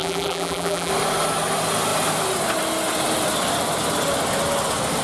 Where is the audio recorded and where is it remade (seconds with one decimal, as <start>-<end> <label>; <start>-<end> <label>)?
0.0-0.9 remade; 0.9-5.0 recorded